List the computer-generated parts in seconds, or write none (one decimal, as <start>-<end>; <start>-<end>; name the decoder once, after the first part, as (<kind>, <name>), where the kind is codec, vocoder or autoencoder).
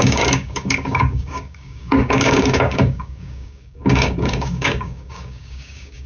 0.0-6.1 (codec, DAC)